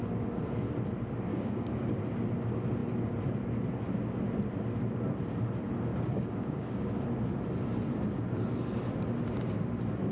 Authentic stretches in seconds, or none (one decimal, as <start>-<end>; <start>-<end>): 0.0-1.3; 2.0-5.9; 6.9-10.1